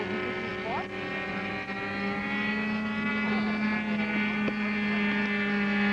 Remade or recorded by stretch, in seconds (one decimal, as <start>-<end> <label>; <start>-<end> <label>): 0.0-5.9 recorded